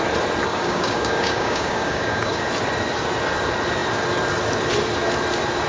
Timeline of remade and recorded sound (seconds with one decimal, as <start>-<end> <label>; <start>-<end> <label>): 0.0-0.5 recorded; 0.5-2.4 remade; 2.4-5.7 recorded